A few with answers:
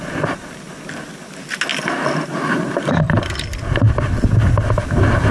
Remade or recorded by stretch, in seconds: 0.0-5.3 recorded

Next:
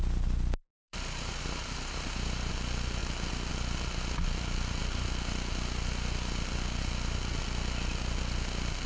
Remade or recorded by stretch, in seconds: 0.0-0.8 recorded; 0.8-2.5 remade; 2.5-8.9 recorded

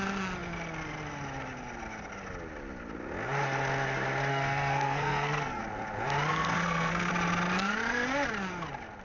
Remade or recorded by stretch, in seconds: 0.0-4.3 recorded; 4.3-5.6 remade; 5.6-6.3 recorded; 6.3-7.1 remade; 7.1-9.0 recorded

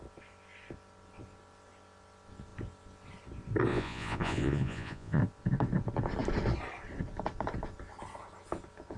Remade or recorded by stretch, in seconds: 0.0-3.7 recorded; 3.7-5.2 remade; 5.2-9.0 recorded

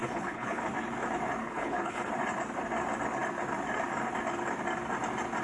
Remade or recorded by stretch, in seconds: 0.0-0.6 remade; 0.6-1.4 recorded; 1.4-2.1 remade; 2.1-5.4 recorded

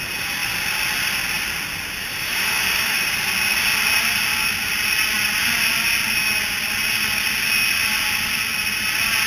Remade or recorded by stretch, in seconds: 0.0-2.0 recorded; 2.0-3.0 remade; 3.0-9.3 recorded

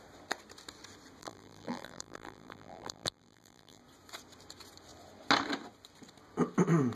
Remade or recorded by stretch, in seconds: 0.0-1.2 recorded; 1.2-3.8 remade; 3.8-7.0 recorded

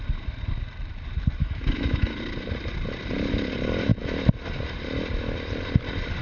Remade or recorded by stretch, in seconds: 0.0-1.4 recorded; 1.4-2.2 remade; 2.2-6.2 recorded